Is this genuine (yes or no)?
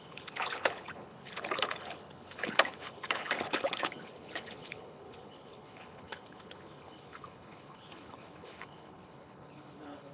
no